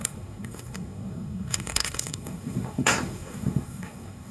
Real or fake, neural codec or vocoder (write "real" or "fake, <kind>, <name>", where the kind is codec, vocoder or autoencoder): fake, codec, SNAC